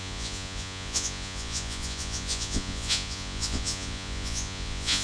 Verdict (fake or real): fake